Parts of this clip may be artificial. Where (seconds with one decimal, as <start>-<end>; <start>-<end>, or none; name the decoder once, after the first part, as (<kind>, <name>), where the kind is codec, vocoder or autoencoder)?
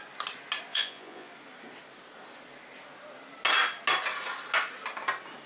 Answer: 0.7-1.3 (vocoder, Vocos)